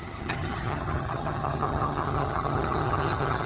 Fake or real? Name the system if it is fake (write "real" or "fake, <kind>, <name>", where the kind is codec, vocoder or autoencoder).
fake, vocoder, HiFi-GAN